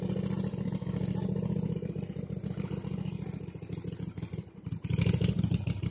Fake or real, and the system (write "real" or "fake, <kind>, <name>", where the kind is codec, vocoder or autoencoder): real